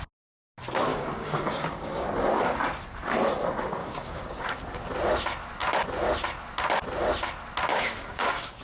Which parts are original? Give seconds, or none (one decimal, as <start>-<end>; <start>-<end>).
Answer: 0.0-0.9; 2.1-3.8; 4.3-7.7